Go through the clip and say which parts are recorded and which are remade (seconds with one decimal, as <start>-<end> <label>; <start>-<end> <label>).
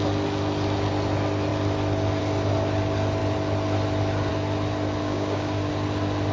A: 0.0-5.0 recorded; 5.0-5.7 remade; 5.7-6.3 recorded